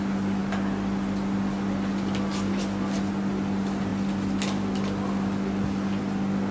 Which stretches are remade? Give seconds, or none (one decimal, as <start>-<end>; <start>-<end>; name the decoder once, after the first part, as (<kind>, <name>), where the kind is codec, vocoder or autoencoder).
none